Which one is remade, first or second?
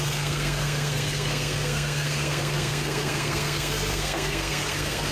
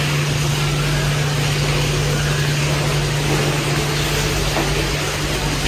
first